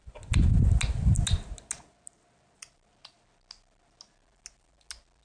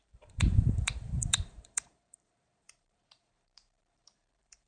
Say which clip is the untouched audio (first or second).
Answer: first